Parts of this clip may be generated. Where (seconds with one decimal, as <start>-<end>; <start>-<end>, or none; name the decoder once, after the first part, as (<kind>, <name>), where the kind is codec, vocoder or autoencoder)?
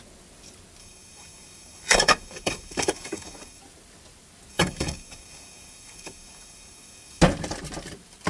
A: 0.8-3.6 (codec, DAC); 4.5-7.2